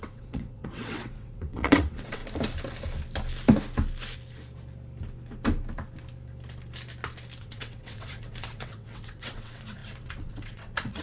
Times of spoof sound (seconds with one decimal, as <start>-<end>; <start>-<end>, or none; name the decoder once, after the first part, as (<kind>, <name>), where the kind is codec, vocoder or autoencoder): 0.0-2.2 (vocoder, WaveNeXt); 7.4-11.0

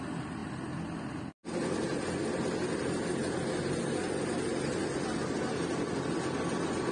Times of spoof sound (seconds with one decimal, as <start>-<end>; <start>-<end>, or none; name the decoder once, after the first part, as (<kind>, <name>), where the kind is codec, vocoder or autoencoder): none

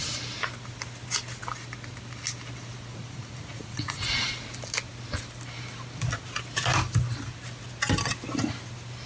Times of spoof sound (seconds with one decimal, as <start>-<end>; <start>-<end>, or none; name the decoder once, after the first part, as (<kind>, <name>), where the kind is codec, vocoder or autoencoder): 2.9-4.3 (vocoder, Vocos)